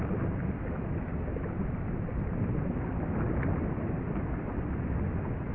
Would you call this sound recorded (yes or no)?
yes